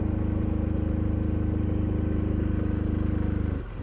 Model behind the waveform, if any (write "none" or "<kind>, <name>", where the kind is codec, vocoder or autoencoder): none